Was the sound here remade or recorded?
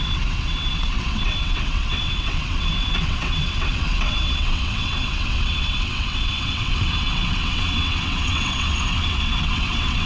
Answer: remade